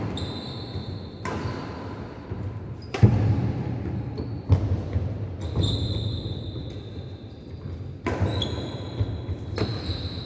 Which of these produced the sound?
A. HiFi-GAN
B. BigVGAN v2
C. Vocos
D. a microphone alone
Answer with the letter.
D